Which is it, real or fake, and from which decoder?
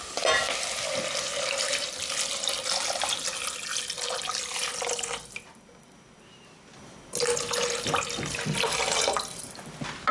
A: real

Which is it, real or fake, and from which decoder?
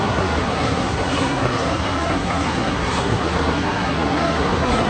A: fake, codec, SNAC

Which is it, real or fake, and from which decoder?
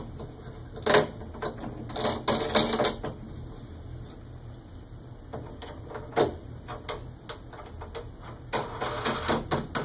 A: real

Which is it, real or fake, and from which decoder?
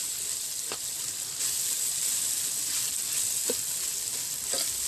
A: real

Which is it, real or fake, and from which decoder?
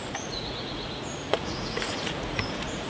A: fake, vocoder, Vocos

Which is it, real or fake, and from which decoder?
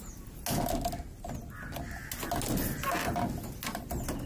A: real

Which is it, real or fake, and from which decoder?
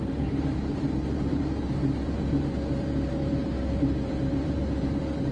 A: fake, vocoder, BigVGAN v2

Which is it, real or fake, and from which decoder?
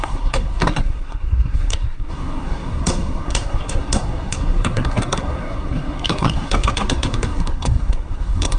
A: fake, codec, SNAC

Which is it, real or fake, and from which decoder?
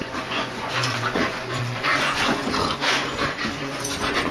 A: fake, vocoder, Vocos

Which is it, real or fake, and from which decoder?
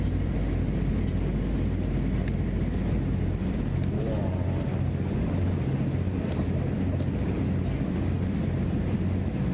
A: real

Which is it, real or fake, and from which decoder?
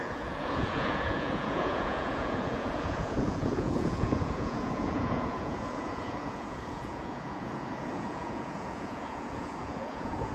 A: fake, vocoder, Vocos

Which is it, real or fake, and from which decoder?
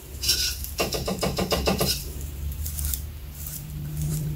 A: fake, vocoder, BigVGAN v2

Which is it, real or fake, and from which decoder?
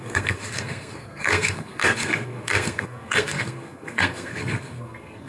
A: fake, codec, SNAC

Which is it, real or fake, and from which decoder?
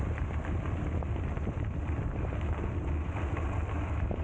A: real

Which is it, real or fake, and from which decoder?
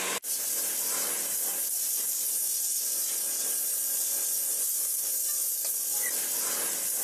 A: fake, vocoder, BigVGAN v2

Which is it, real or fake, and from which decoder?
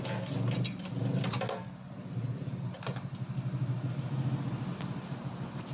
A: real